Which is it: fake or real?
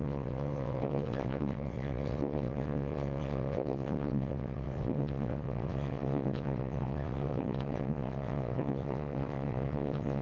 fake